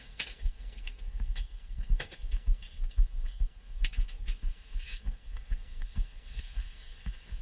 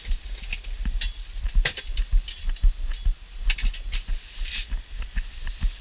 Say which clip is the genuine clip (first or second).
second